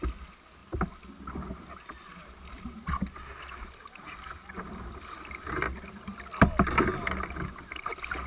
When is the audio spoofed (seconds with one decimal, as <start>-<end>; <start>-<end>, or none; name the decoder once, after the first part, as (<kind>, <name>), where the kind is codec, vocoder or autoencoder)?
none